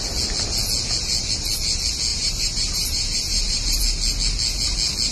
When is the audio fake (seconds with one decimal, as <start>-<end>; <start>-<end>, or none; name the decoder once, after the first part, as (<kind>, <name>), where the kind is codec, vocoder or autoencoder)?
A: 2.1-3.8 (vocoder, BigVGAN v2)

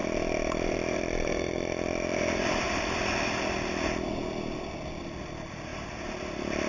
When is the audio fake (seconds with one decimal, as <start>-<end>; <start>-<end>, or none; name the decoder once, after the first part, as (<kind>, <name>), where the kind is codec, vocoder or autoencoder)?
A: 0.0-4.0 (vocoder, BigVGAN v2); 5.7-6.7

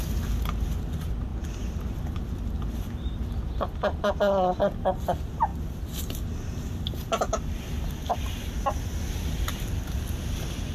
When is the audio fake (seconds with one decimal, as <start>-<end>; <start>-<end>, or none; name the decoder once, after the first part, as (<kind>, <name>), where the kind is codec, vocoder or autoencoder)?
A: 1.3-2.0 (vocoder, BigVGAN v2); 3.9-4.5

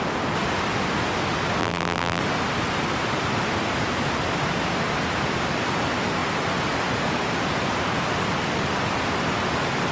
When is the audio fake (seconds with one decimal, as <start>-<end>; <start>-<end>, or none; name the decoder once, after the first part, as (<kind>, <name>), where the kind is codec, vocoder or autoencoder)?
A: 1.6-2.2 (vocoder, BigVGAN v2)

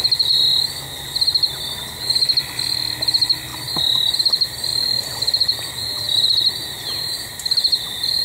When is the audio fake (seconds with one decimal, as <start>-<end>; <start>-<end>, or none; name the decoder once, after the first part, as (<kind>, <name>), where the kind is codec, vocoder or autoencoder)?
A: 4.7-6.5 (vocoder, BigVGAN v2)